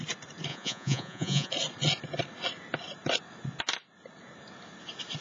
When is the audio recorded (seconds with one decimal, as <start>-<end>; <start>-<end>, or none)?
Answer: 0.0-0.5; 1.5-5.2